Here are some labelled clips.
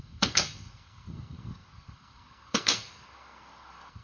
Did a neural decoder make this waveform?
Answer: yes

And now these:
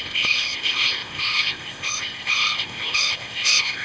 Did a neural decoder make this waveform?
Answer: yes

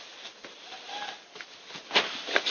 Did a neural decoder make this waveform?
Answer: no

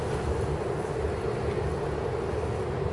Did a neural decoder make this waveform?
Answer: no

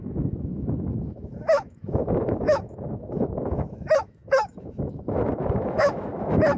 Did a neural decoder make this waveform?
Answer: yes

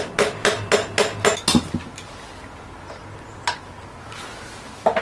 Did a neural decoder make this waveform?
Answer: no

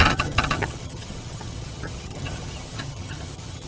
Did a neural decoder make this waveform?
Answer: yes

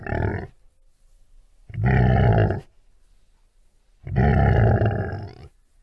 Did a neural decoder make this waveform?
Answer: no